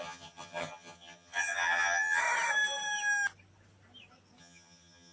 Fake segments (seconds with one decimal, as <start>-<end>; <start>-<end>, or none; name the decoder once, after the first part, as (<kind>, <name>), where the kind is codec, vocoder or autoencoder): 0.0-2.2 (vocoder, HiFi-GAN); 4.4-5.1